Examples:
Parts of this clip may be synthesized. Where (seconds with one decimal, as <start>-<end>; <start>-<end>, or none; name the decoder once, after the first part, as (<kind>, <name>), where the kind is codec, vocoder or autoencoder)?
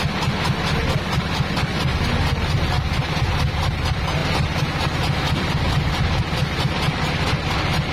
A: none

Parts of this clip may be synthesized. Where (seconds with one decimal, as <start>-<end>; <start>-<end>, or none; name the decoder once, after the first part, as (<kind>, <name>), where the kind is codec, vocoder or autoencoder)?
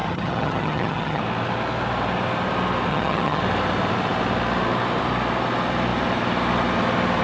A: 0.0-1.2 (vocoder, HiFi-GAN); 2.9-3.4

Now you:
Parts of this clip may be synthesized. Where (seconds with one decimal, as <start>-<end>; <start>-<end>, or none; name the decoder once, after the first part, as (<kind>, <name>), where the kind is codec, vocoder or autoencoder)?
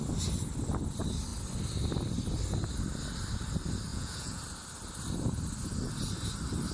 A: 3.9-4.4 (vocoder, Vocos)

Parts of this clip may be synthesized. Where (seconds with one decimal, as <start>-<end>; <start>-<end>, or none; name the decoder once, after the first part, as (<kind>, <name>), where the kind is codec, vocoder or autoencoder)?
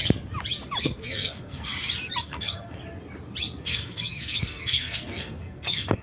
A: 0.8-1.7 (codec, SNAC); 2.2-2.8; 3.6-6.0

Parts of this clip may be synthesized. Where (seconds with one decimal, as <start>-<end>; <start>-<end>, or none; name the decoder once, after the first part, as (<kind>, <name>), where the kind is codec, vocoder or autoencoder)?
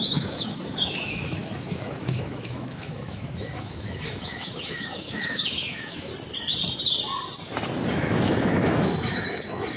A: 0.0-6.1 (autoencoder, DAC-VAE); 7.9-9.8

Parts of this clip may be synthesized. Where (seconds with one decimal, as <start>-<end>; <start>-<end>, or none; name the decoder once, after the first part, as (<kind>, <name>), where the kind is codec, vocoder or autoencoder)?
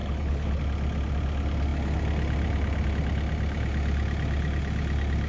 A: 0.0-0.6 (codec, HILCodec)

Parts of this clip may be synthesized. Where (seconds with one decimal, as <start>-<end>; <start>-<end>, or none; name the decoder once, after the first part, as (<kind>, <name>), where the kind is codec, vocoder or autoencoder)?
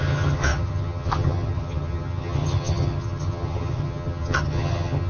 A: 0.0-5.1 (vocoder, HiFi-GAN)